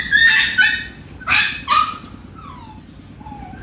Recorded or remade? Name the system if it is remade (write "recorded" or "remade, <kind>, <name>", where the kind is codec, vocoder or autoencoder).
recorded